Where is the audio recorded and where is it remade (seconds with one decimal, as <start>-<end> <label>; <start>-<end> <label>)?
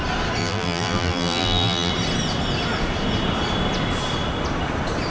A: 0.0-0.4 recorded; 0.4-1.9 remade; 1.9-5.1 recorded